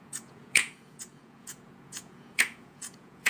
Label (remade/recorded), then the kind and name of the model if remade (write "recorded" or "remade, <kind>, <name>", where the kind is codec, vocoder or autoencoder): remade, vocoder, Vocos